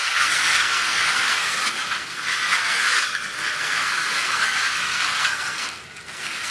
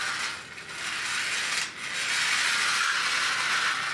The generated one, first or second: first